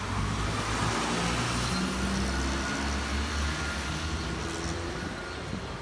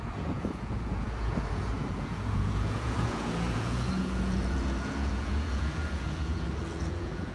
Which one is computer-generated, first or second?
second